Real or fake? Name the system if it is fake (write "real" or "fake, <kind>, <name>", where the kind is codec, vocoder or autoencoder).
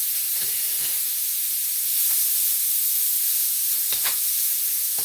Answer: fake, autoencoder, DAC-VAE